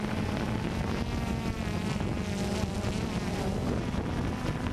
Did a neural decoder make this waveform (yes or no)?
no